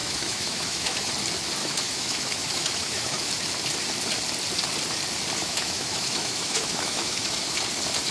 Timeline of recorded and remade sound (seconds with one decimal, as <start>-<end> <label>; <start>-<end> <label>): 0.0-1.1 remade; 1.1-1.6 recorded; 1.6-3.3 remade; 3.3-5.4 recorded; 5.4-7.6 remade; 7.6-8.1 recorded